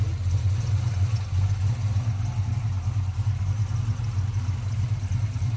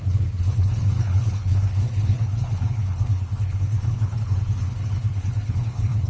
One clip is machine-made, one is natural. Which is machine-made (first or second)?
second